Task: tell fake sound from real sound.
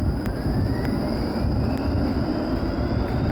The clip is real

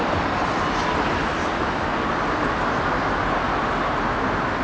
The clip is real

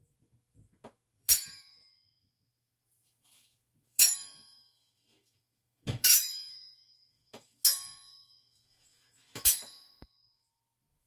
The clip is fake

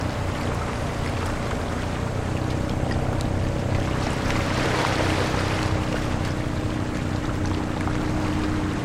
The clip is real